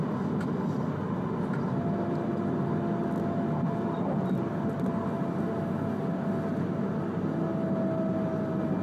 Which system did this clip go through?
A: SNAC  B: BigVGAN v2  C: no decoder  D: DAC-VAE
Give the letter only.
C